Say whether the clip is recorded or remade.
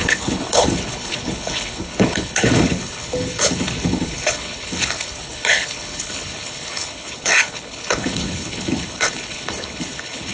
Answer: remade